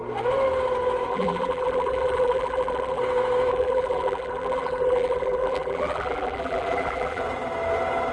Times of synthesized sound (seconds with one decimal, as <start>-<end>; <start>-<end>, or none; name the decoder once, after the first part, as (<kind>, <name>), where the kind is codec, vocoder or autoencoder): 1.1-3.0 (vocoder, BigVGAN v2); 3.5-7.2